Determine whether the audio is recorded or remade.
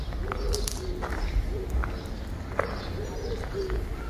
recorded